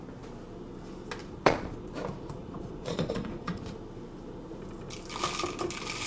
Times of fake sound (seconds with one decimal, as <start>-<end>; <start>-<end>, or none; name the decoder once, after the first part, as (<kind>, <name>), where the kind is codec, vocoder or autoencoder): 1.2-1.9 (vocoder, Vocos); 2.4-3.8